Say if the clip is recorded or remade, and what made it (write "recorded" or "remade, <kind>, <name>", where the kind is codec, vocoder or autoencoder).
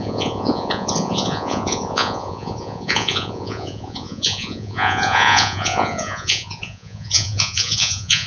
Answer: remade, vocoder, Vocos